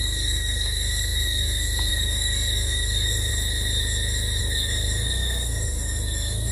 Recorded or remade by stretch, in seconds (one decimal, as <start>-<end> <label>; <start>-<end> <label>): 0.0-3.3 remade; 3.3-4.4 recorded; 4.4-6.5 remade